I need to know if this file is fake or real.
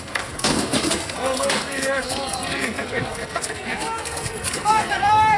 fake